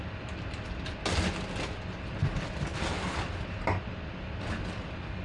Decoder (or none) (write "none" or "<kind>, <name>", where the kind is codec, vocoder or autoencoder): none